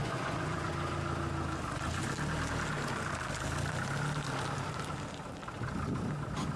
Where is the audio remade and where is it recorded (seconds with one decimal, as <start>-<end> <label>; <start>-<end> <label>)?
0.0-0.7 remade; 0.7-6.6 recorded